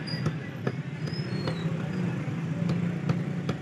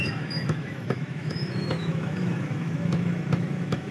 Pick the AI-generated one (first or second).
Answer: second